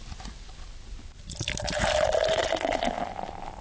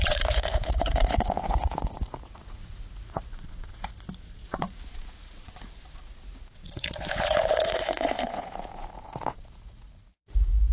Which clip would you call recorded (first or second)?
first